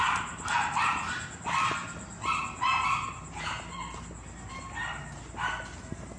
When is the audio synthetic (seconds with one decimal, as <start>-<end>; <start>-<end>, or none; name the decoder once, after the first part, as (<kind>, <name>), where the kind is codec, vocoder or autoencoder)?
none